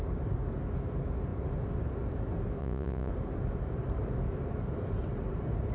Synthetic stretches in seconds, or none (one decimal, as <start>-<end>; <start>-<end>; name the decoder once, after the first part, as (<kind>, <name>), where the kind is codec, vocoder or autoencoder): 2.6-3.1 (vocoder, Vocos)